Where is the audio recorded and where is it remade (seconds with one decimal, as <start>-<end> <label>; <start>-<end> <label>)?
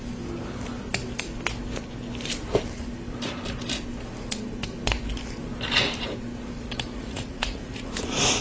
0.0-6.9 recorded; 6.9-7.9 remade; 7.9-8.4 recorded